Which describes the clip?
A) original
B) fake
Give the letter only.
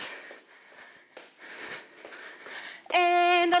A